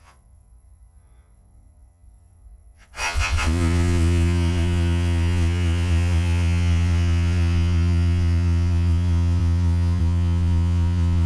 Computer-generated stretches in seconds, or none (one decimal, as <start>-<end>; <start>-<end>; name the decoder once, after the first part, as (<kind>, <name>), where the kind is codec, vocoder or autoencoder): 0.0-11.3 (vocoder, Vocos)